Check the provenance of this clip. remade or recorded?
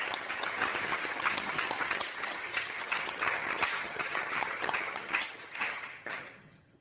remade